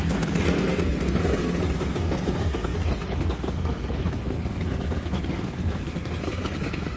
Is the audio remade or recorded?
remade